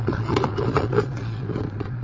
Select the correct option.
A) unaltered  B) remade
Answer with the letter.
B